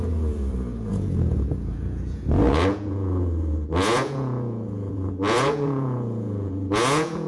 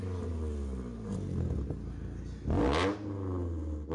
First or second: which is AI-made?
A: first